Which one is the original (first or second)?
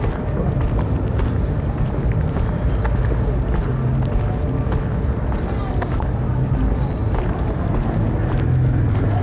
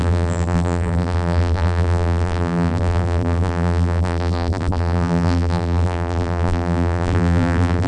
first